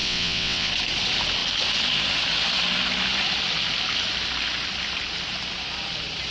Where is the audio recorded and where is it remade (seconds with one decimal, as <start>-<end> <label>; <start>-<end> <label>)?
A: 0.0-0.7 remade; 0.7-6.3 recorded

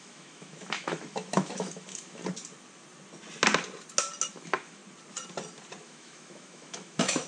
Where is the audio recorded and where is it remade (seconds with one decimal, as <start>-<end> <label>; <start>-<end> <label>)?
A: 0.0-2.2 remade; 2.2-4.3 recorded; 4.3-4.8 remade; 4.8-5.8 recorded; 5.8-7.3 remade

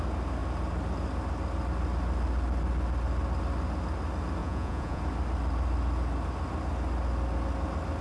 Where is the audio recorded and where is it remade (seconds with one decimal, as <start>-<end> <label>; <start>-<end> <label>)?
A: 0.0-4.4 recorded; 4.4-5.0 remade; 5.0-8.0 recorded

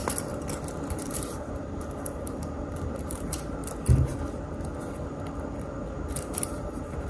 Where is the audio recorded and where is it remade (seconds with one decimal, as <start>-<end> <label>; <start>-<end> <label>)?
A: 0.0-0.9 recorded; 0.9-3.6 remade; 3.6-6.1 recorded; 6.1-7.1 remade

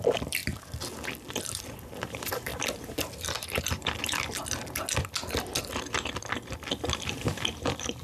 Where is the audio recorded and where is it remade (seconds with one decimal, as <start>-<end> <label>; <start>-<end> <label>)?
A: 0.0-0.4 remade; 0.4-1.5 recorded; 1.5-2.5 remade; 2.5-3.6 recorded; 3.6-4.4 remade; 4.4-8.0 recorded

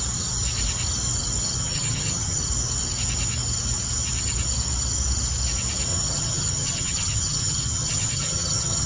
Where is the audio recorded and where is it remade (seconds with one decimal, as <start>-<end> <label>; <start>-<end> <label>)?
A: 0.0-1.4 recorded; 1.4-2.4 remade; 2.4-5.9 recorded; 5.9-8.9 remade